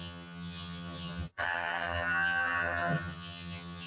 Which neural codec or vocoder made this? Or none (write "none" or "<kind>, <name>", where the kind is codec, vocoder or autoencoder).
vocoder, HiFi-GAN